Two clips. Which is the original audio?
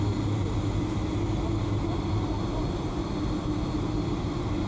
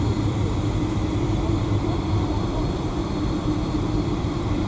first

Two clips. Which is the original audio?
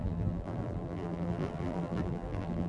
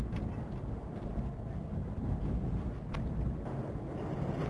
second